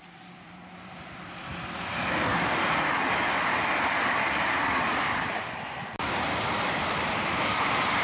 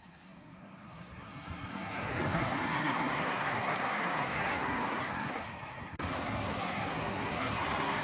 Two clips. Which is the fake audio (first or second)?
second